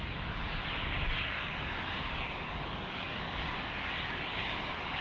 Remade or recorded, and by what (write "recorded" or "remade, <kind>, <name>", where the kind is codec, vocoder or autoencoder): remade, codec, DAC